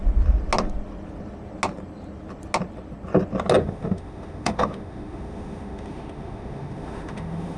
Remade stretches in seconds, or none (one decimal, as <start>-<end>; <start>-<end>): 3.6-7.6

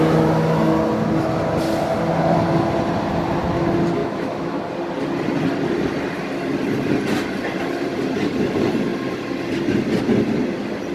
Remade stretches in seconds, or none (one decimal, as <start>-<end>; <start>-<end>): 4.0-4.6